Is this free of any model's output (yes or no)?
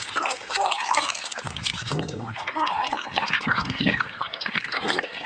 no